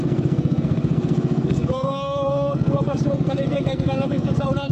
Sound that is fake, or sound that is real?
fake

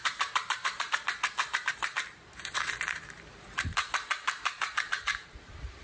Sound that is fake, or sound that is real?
fake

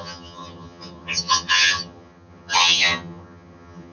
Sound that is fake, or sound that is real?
fake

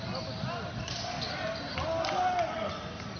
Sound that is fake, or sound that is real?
real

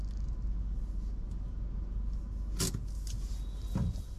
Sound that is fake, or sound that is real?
real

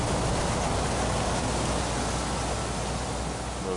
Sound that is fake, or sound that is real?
real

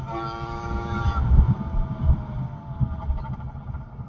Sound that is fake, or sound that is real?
real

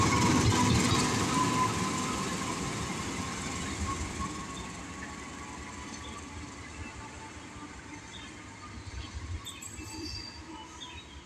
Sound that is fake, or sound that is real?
fake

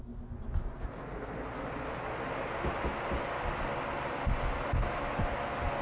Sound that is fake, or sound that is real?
real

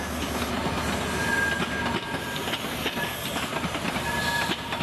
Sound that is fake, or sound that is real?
real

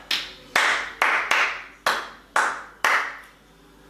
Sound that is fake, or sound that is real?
real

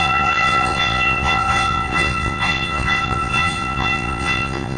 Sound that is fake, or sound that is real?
fake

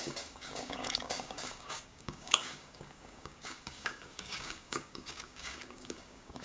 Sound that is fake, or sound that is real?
fake